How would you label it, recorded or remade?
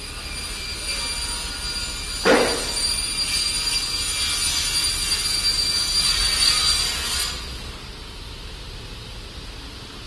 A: recorded